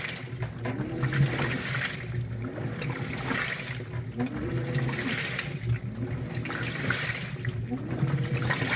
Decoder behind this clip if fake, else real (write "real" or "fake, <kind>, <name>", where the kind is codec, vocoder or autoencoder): real